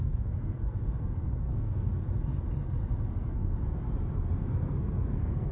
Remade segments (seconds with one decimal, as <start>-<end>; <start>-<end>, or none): 0.0-1.9; 3.1-3.8; 4.4-5.5

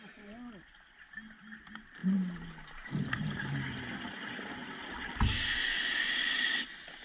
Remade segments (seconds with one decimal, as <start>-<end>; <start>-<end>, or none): none

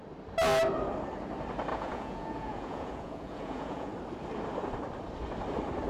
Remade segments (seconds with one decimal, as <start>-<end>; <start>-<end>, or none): 1.7-3.9